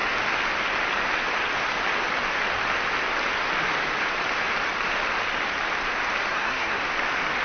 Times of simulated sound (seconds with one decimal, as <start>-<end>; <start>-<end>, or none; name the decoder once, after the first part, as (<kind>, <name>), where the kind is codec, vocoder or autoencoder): 6.3-6.8 (codec, SNAC)